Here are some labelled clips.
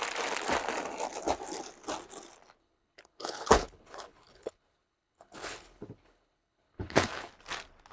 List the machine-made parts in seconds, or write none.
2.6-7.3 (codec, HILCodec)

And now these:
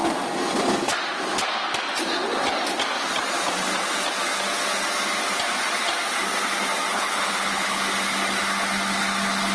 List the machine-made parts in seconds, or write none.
6.9-7.8 (codec, HILCodec)

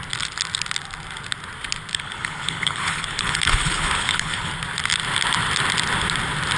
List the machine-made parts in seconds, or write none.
1.9-4.5 (codec, HILCodec)